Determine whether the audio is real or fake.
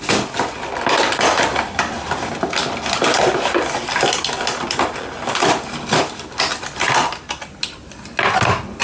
real